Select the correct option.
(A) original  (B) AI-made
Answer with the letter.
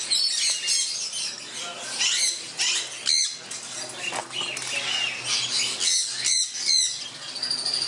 A